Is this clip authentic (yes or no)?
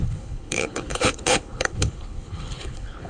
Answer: no